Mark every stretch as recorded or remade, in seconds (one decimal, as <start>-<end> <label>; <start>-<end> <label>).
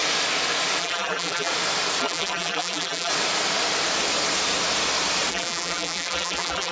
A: 0.0-0.8 recorded; 0.8-1.5 remade; 1.5-2.0 recorded; 2.0-3.1 remade; 3.1-5.3 recorded; 5.3-6.7 remade